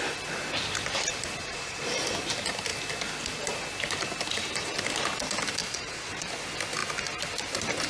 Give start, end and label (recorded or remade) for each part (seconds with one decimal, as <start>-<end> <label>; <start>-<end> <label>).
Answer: 0.0-1.4 recorded; 1.4-2.1 remade; 2.1-5.6 recorded; 5.6-6.3 remade; 6.3-7.9 recorded